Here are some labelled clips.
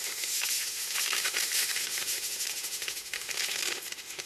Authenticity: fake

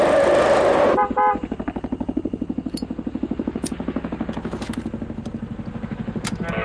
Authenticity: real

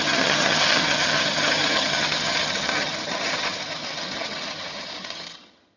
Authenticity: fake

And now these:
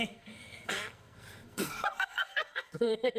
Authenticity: fake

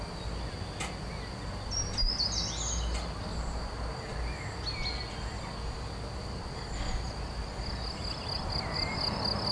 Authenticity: real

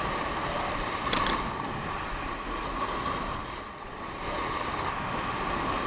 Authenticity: real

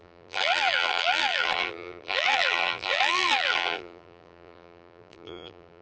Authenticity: fake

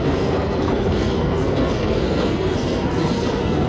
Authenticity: fake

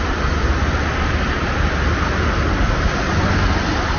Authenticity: real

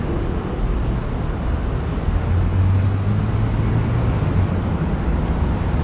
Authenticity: real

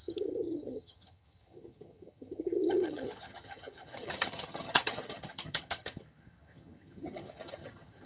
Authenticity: fake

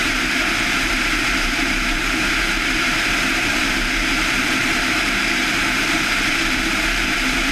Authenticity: fake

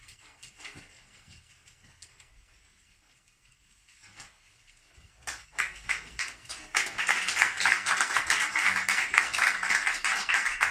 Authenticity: fake